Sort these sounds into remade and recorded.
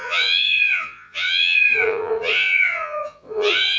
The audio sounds remade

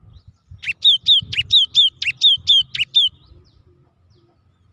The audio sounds recorded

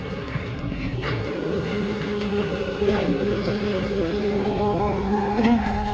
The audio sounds remade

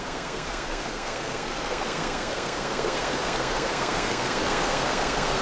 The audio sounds remade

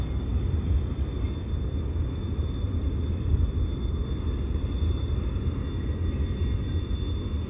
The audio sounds recorded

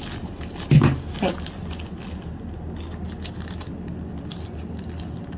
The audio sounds recorded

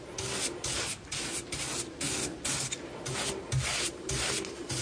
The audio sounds recorded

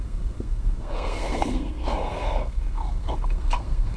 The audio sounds remade